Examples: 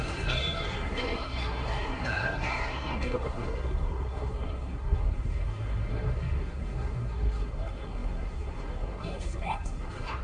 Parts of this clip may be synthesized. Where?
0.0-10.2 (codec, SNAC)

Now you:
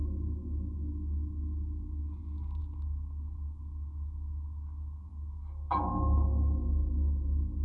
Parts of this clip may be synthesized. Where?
none

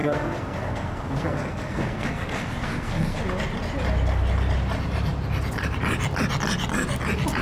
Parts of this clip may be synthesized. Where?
0.0-3.2 (codec, SNAC)

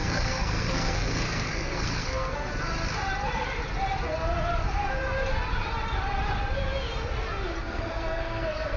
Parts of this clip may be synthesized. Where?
0.0-2.5 (codec, SNAC); 7.6-8.8

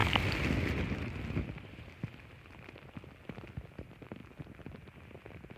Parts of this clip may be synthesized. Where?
none

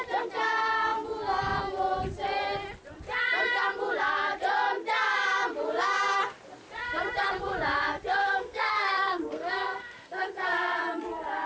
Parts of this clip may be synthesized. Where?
8.2-10.8 (codec, SNAC)

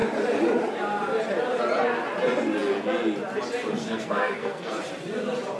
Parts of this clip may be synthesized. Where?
3.8-4.8 (codec, SNAC)